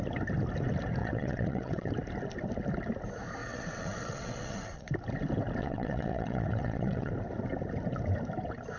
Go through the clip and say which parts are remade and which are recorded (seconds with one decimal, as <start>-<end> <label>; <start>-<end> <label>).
0.0-1.0 recorded; 1.0-1.9 remade; 1.9-3.4 recorded; 3.4-4.9 remade; 4.9-5.6 recorded; 5.6-7.1 remade; 7.1-8.8 recorded